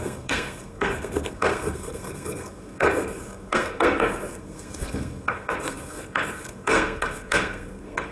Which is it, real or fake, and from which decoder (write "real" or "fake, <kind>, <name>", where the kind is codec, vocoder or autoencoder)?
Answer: fake, codec, SNAC